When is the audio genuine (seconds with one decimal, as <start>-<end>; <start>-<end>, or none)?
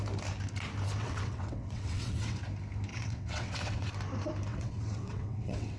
0.0-1.0; 2.4-2.9; 3.9-4.5